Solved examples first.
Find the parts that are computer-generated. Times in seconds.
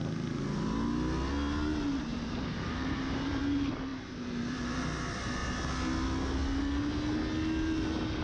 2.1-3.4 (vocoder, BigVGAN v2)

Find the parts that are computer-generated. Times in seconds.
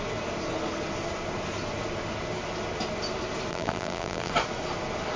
3.5-4.3 (vocoder, BigVGAN v2)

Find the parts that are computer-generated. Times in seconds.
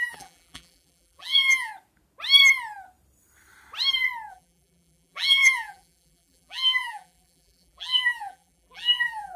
0.0-1.7 (vocoder, BigVGAN v2); 4.3-9.4